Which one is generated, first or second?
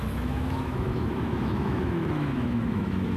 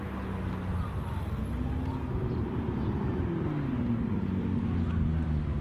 first